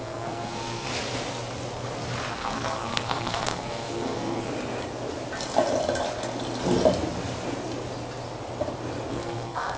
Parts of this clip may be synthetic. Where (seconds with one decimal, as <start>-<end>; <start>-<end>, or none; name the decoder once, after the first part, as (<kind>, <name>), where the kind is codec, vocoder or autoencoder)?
0.0-0.9 (codec, SNAC); 2.3-4.5; 9.1-9.8